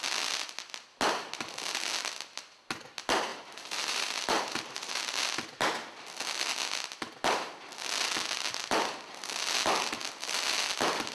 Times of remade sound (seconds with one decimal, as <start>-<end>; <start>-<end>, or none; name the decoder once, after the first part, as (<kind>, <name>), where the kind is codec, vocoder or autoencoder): 3.3-4.9 (vocoder, BigVGAN v2)